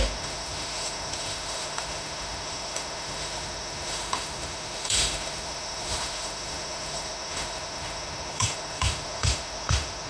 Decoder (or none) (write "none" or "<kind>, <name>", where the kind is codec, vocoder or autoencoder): autoencoder, DAC-VAE